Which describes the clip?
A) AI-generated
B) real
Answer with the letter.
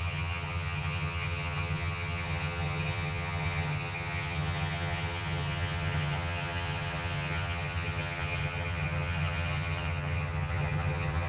A